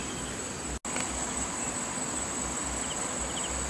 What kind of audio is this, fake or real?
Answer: real